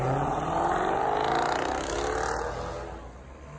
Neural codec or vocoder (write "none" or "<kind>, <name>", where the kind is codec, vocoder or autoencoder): none